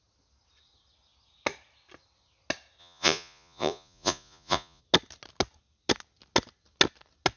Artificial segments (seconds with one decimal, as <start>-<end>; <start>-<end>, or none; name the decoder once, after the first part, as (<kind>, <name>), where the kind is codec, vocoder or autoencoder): 2.8-4.8 (vocoder, Vocos)